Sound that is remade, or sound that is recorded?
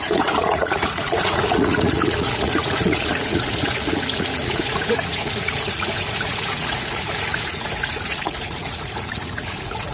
remade